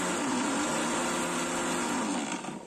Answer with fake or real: real